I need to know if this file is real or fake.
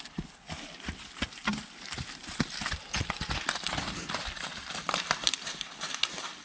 fake